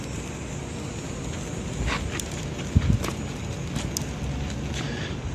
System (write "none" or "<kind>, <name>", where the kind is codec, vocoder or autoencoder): none